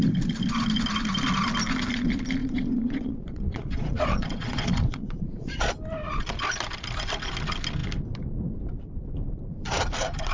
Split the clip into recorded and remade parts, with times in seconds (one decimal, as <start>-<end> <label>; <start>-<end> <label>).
0.0-2.4 recorded; 2.4-5.7 remade; 5.7-10.3 recorded